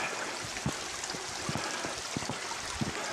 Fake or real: real